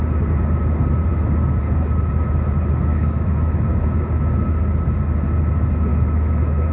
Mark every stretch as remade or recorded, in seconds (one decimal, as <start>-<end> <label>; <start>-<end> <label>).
0.0-2.9 recorded; 2.9-3.5 remade; 3.5-5.9 recorded; 5.9-6.7 remade